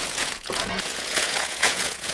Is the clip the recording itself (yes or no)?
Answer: no